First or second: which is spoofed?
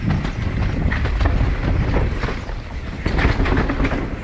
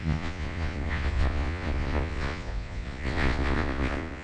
second